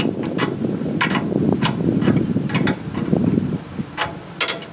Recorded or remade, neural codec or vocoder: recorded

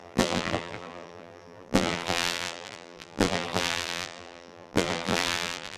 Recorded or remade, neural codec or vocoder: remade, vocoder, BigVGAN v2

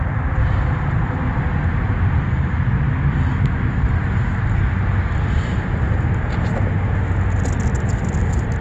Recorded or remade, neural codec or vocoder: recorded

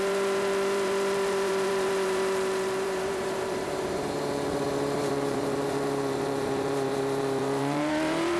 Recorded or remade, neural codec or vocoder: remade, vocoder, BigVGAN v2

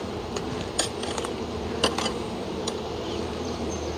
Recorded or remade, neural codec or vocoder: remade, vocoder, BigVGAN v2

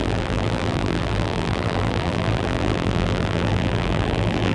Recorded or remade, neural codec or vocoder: remade, vocoder, BigVGAN v2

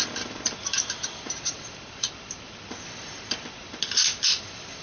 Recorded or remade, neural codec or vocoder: remade, vocoder, BigVGAN v2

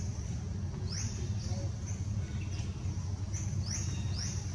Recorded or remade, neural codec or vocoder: recorded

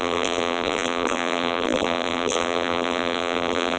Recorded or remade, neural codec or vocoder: remade, vocoder, BigVGAN v2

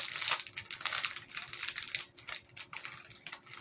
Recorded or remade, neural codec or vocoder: recorded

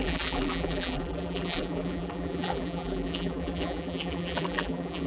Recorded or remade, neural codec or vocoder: remade, vocoder, BigVGAN v2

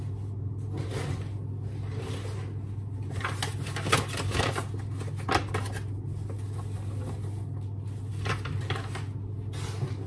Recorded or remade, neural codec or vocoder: recorded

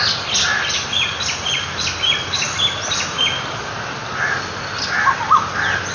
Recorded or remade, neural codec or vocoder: recorded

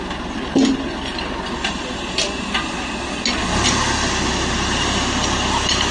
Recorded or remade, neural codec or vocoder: recorded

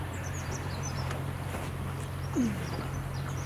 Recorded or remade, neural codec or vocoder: remade, vocoder, BigVGAN v2